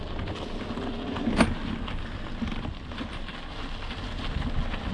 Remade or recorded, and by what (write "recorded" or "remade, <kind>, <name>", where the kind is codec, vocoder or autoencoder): recorded